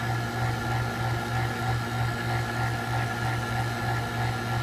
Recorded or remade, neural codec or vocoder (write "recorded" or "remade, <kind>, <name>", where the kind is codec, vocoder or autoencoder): recorded